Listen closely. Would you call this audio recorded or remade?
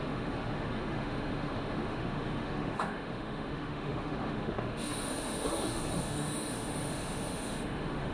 remade